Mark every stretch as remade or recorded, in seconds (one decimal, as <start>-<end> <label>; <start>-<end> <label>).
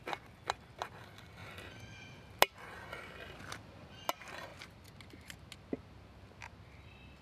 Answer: 0.0-7.2 recorded